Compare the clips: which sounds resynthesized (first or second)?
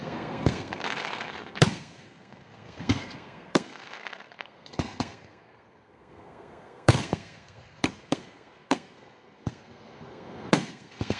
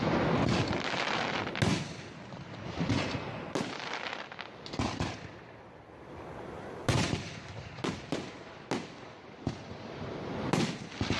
first